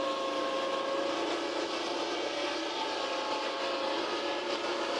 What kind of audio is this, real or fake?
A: real